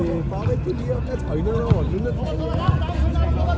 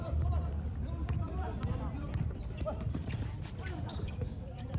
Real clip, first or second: first